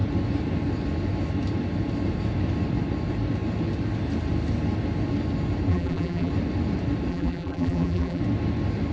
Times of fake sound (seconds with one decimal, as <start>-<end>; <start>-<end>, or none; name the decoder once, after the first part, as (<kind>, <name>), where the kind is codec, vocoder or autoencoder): 5.7-6.3 (vocoder, BigVGAN v2); 7.1-8.2

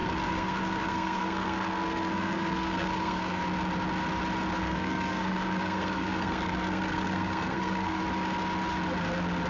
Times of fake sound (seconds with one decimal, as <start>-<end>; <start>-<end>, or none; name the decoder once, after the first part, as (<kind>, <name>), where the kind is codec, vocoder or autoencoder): 0.0-3.4 (codec, SNAC); 4.6-8.0

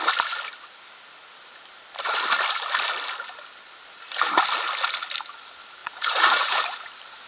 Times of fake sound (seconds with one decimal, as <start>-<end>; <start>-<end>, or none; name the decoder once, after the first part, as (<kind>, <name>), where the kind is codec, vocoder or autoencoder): 5.8-6.6 (vocoder, Vocos)

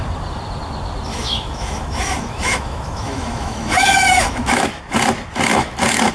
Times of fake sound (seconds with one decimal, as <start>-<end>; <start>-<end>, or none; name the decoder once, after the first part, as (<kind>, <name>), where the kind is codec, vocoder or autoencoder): 1.1-4.8 (autoencoder, DAC-VAE); 5.5-6.1

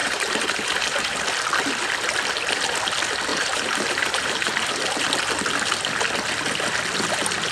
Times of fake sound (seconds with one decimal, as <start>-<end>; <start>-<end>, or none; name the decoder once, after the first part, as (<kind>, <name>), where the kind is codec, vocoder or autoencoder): 0.0-1.2 (vocoder, BigVGAN v2); 3.3-4.7